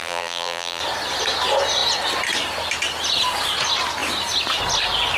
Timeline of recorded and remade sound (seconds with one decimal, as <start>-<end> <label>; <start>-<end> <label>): 0.0-0.8 remade; 0.8-5.2 recorded